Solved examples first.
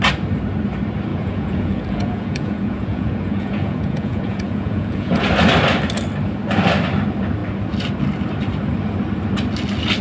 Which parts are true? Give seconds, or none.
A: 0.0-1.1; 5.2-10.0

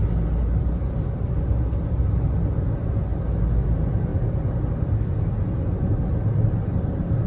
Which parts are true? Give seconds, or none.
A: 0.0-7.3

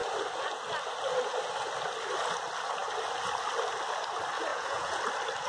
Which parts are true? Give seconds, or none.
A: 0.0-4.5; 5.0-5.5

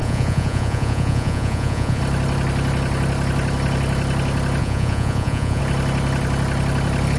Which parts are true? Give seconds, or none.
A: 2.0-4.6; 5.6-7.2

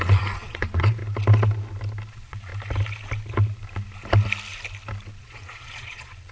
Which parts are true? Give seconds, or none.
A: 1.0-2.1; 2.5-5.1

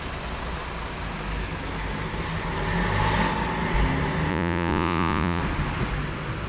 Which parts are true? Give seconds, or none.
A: 0.0-4.3; 5.4-6.5